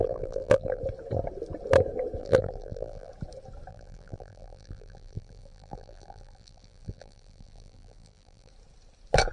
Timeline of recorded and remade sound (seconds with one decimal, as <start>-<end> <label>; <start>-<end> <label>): 0.0-0.8 remade; 0.8-2.2 recorded; 2.2-3.1 remade; 3.1-3.7 recorded; 3.7-8.5 remade; 8.5-9.3 recorded